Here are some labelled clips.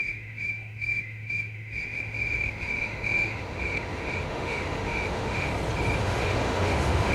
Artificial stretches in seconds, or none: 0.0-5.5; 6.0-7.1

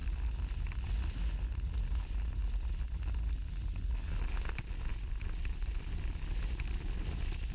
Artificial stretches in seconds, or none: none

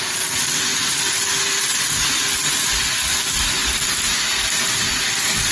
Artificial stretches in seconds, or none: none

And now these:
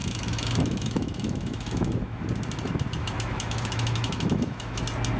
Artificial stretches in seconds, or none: 0.0-2.2; 3.0-4.8

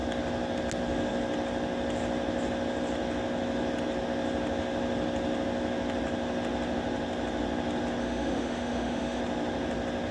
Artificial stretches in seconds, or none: 8.0-9.2

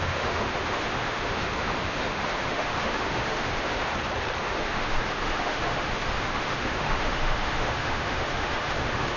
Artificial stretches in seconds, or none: 0.0-3.9; 4.4-9.2